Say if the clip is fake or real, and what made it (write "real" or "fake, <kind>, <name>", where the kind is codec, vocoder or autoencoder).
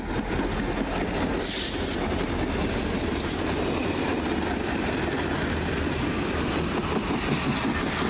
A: real